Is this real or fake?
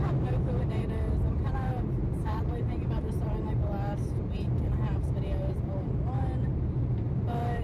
fake